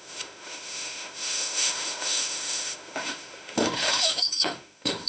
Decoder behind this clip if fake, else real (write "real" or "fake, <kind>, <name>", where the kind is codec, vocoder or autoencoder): fake, autoencoder, DAC-VAE